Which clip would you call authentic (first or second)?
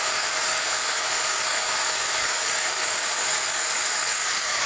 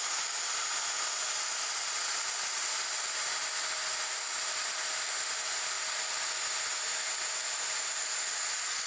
second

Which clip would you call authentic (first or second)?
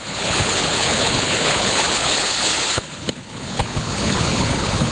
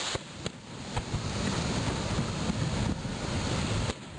second